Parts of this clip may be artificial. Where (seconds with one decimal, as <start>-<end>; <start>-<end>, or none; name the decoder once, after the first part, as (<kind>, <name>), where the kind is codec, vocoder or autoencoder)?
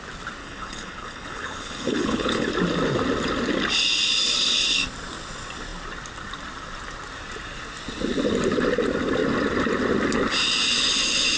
0.4-2.5 (codec, HILCodec)